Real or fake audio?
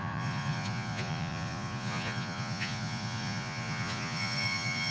fake